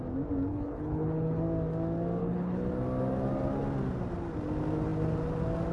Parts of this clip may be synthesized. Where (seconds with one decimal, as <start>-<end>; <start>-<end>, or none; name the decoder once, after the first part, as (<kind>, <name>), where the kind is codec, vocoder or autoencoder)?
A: 0.5-1.4 (codec, HILCodec); 2.2-2.7